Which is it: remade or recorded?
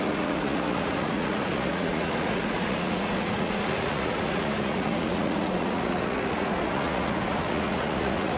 remade